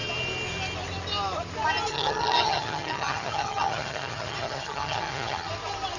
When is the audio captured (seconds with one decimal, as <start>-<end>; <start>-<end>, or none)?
0.0-1.9; 5.5-6.0